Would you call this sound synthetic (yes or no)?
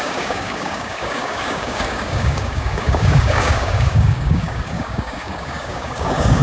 yes